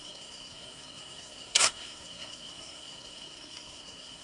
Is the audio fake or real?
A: fake